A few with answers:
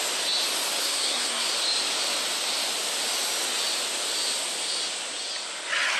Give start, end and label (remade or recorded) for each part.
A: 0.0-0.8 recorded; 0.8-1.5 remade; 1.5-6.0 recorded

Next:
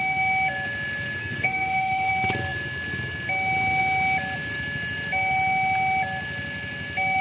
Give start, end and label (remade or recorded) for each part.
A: 0.0-1.2 recorded; 1.2-2.1 remade; 2.1-7.2 recorded

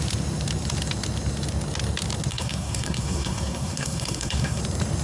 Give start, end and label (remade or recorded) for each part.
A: 0.0-2.3 recorded; 2.3-4.6 remade; 4.6-5.0 recorded